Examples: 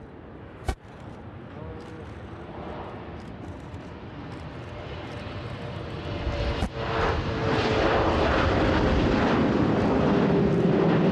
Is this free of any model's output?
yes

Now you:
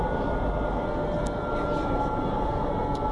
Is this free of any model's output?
yes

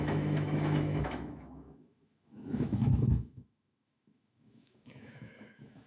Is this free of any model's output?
no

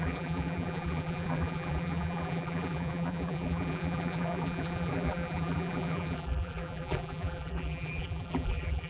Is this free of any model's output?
no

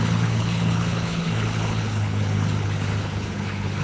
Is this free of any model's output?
no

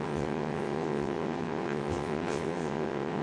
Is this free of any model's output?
no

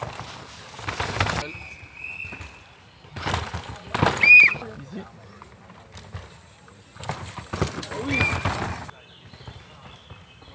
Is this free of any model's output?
yes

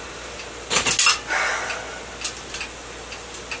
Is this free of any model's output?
yes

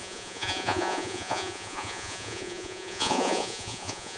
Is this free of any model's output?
no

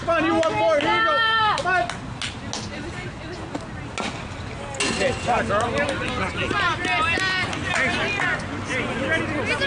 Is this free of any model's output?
yes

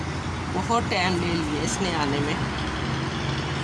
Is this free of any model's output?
yes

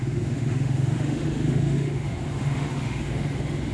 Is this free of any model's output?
no